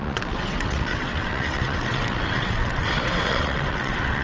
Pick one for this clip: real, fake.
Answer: fake